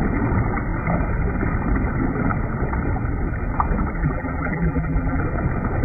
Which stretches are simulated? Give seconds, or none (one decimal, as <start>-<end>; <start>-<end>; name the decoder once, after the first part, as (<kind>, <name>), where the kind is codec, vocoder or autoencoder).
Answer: 4.0-5.2 (vocoder, BigVGAN v2)